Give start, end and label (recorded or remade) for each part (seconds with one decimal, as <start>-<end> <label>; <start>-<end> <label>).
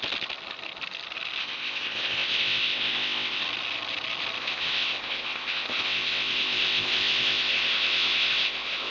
0.0-1.4 recorded; 1.4-3.4 remade; 3.4-4.4 recorded; 4.4-8.9 remade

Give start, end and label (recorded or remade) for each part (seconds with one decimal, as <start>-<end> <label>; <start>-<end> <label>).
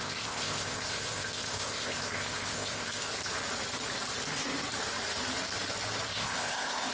0.0-3.1 remade; 3.1-6.1 recorded; 6.1-6.9 remade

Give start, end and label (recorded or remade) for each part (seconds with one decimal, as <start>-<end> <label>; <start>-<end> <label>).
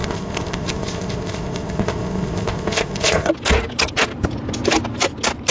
0.0-3.3 remade; 3.3-5.5 recorded